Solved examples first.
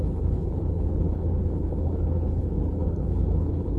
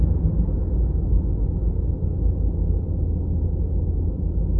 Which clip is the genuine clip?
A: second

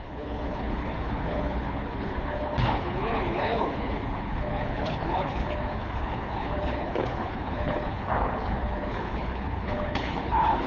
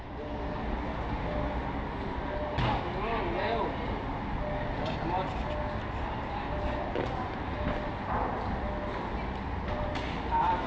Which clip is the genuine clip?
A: second